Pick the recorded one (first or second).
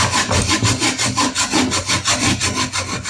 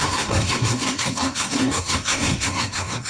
first